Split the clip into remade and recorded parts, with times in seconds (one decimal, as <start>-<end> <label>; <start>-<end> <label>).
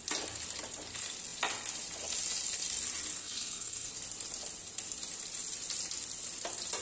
0.0-3.2 recorded; 3.2-3.9 remade; 3.9-6.8 recorded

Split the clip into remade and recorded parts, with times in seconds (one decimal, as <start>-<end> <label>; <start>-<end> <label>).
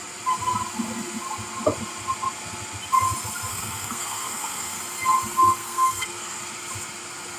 0.0-3.5 recorded; 3.5-4.8 remade; 4.8-5.6 recorded; 5.6-6.4 remade; 6.4-7.4 recorded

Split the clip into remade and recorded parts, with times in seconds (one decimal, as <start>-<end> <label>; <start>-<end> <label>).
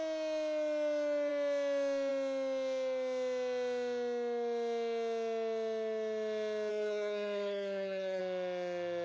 0.0-6.7 recorded; 6.7-8.2 remade; 8.2-9.0 recorded